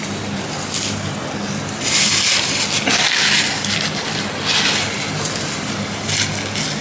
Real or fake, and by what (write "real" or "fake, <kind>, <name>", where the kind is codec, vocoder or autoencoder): real